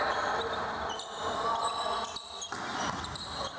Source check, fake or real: real